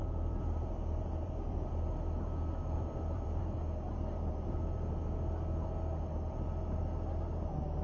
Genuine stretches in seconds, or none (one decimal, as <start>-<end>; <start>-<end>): 1.7-2.6; 3.4-7.8